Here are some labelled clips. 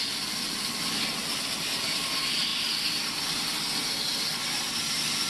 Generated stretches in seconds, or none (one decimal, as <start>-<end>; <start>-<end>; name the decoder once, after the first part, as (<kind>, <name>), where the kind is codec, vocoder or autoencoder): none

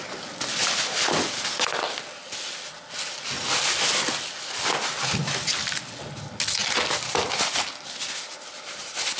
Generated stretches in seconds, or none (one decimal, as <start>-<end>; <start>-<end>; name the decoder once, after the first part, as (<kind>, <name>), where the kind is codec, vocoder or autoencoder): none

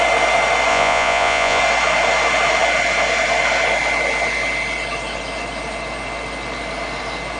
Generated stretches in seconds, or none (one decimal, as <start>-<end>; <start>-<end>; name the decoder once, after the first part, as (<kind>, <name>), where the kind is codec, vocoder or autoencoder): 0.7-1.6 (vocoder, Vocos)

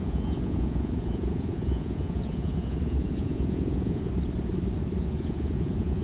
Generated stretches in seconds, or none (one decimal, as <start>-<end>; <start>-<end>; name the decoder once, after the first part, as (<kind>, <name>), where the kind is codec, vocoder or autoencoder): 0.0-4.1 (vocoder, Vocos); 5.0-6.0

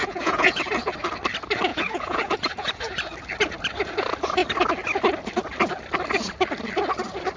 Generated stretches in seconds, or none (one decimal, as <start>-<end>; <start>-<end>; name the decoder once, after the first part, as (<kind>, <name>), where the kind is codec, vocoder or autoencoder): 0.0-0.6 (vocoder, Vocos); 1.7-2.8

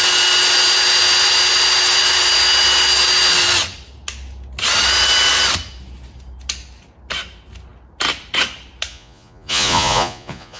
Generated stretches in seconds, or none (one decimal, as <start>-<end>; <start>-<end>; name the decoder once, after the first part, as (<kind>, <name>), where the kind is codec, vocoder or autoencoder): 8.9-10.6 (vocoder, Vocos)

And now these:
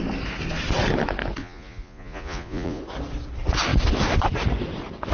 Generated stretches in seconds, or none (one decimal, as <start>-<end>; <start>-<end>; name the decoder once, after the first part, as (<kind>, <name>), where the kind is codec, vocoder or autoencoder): 1.4-2.8 (vocoder, Vocos)

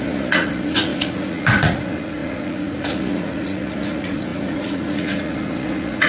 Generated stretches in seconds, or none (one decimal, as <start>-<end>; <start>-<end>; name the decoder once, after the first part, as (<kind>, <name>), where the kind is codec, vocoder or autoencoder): 0.0-6.1 (vocoder, Vocos)